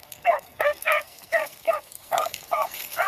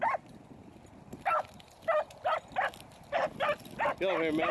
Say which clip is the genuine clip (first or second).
second